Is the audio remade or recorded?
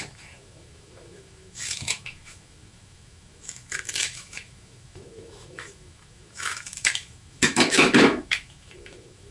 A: remade